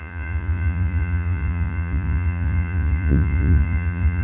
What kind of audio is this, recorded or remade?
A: remade